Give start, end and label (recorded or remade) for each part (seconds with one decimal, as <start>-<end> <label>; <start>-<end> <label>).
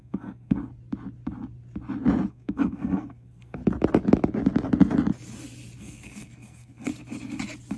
0.0-0.6 remade; 0.6-2.3 recorded; 2.3-3.6 remade; 3.6-5.8 recorded; 5.8-6.9 remade; 6.9-7.8 recorded